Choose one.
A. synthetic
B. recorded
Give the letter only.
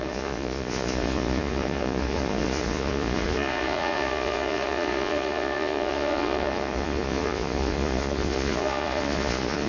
A